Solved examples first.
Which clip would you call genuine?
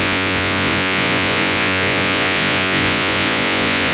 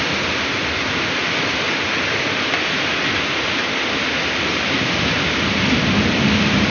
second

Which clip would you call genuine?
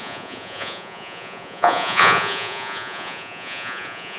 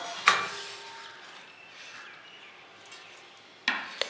second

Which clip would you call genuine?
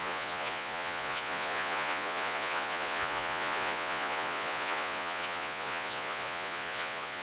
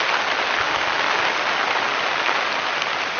second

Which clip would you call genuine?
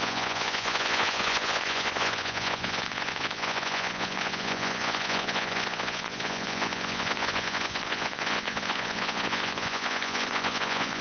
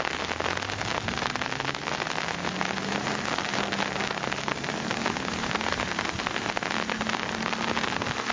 second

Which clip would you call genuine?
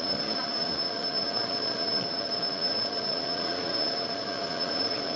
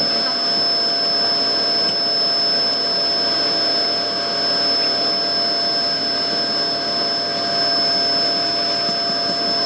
second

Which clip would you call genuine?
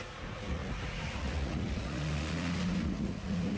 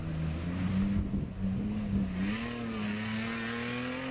second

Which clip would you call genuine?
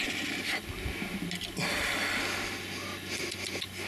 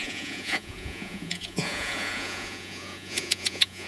first